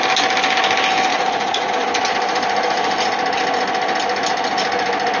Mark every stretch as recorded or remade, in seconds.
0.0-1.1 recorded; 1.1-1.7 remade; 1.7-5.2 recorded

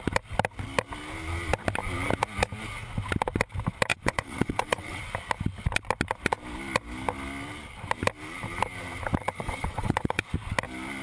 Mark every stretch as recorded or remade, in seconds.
0.0-3.9 recorded; 3.9-5.0 remade; 5.0-9.2 recorded; 9.2-10.3 remade; 10.3-11.0 recorded

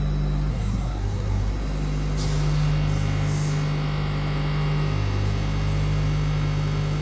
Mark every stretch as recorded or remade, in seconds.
0.0-0.5 recorded; 0.5-1.5 remade; 1.5-7.0 recorded

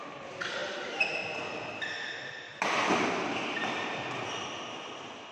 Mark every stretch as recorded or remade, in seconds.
0.0-5.3 recorded

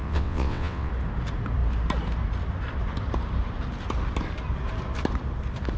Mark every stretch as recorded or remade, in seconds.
0.0-0.9 remade; 0.9-5.8 recorded

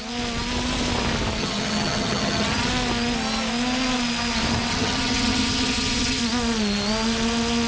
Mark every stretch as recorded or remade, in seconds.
0.0-1.4 recorded; 1.4-2.7 remade; 2.7-4.7 recorded; 4.7-6.2 remade; 6.2-7.7 recorded

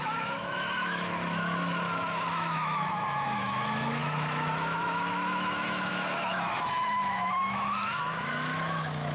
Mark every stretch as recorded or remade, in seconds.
0.0-9.1 remade